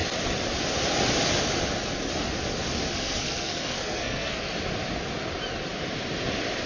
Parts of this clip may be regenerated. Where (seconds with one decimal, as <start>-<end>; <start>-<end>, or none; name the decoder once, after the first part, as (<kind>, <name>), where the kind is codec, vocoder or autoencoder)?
2.9-4.4 (codec, SNAC)